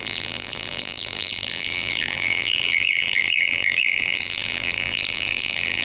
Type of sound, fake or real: fake